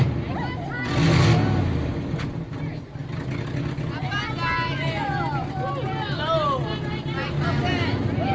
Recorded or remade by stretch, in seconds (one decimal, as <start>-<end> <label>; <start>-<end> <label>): 0.0-8.3 recorded